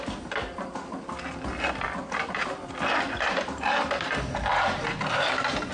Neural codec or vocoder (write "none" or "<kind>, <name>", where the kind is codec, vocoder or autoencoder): none